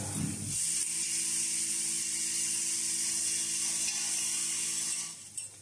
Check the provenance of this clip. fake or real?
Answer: real